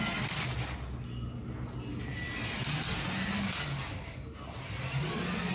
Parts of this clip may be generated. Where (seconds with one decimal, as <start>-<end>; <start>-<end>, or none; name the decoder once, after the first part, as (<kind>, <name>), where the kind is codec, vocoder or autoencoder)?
none